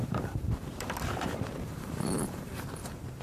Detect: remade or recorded remade